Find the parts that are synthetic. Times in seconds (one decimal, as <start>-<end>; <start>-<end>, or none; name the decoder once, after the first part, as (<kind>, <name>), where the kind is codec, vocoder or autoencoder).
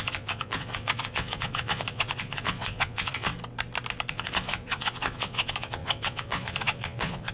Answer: 0.0-3.3 (vocoder, Vocos); 4.1-7.3